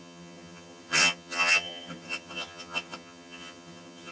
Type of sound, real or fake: fake